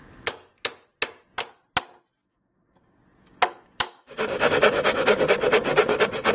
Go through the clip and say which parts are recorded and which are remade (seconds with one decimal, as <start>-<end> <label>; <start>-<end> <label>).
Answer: 0.0-2.2 recorded; 2.2-5.2 remade; 5.2-6.3 recorded